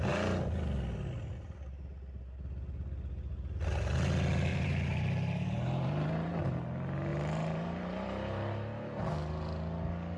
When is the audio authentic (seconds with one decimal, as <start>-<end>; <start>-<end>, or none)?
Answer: 0.0-4.5; 6.3-7.1; 9.0-10.2